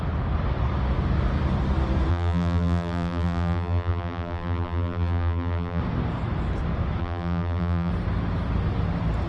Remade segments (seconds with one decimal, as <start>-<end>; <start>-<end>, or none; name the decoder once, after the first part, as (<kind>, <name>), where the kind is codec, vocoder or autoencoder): 2.1-5.8 (vocoder, BigVGAN v2); 7.0-7.9